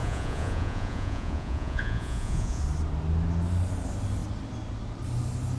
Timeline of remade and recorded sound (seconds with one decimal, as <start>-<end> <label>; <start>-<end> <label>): 0.0-2.6 remade; 2.6-5.6 recorded